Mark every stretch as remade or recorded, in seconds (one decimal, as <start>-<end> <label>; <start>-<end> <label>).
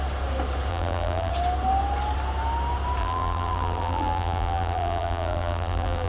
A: 0.0-0.7 recorded; 0.7-1.3 remade; 1.3-3.0 recorded; 3.0-6.1 remade